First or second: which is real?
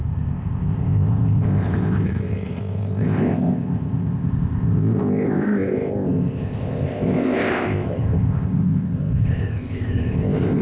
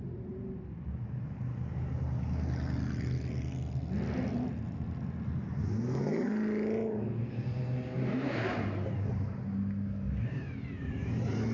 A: second